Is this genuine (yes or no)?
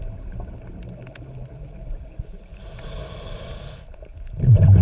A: no